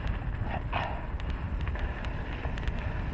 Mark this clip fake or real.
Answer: real